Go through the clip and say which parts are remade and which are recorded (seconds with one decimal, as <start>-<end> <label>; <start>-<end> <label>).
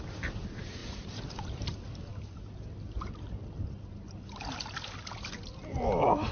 0.0-0.8 recorded; 0.8-1.5 remade; 1.5-6.3 recorded